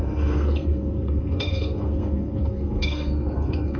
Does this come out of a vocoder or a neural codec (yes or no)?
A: yes